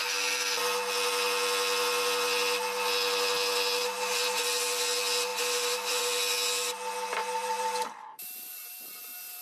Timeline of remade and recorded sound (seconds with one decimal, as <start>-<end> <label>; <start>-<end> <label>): 0.0-0.6 remade; 0.6-3.8 recorded; 3.8-4.4 remade; 4.4-5.3 recorded; 5.3-6.0 remade; 6.0-7.2 recorded; 7.2-8.7 remade; 8.7-9.4 recorded